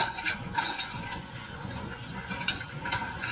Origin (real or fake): fake